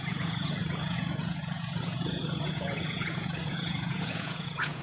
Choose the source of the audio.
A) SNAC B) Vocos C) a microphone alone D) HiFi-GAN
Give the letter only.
B